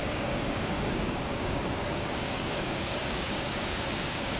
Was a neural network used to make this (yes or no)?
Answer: yes